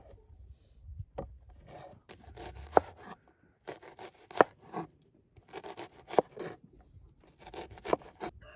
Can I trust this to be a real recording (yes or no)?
yes